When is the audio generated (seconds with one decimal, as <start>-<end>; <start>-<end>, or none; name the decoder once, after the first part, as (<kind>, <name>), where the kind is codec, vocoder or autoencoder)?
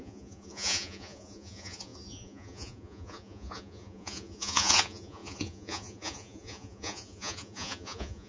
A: 0.0-8.3 (vocoder, Vocos)